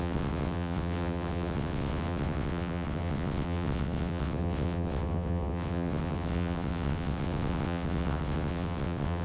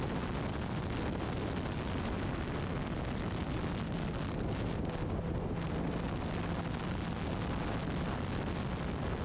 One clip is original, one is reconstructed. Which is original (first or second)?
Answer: second